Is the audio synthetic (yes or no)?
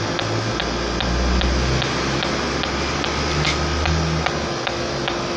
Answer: no